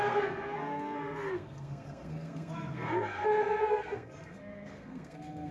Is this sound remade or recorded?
remade